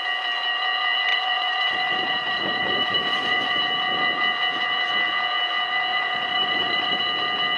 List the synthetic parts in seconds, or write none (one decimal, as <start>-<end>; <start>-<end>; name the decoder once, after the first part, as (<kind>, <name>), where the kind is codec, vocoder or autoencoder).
1.1-3.6 (vocoder, Vocos); 5.9-7.0